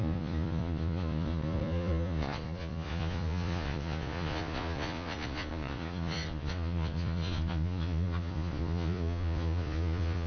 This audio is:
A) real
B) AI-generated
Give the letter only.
B